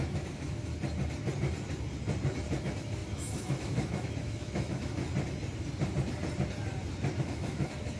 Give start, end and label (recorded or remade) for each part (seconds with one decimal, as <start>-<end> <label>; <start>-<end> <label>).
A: 0.0-0.7 remade; 0.7-2.6 recorded; 2.6-5.0 remade; 5.0-7.2 recorded; 7.2-8.0 remade